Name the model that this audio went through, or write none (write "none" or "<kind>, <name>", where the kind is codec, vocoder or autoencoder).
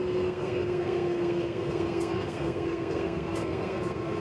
codec, SNAC